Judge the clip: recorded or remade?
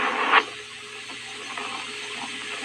recorded